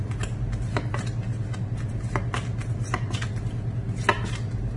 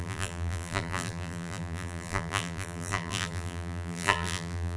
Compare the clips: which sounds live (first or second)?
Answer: first